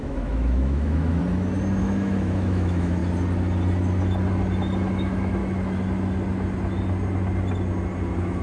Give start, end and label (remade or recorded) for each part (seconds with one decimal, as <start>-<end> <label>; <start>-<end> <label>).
0.0-1.2 remade; 1.2-1.8 recorded; 1.8-3.0 remade; 3.0-4.9 recorded; 4.9-5.4 remade; 5.4-8.4 recorded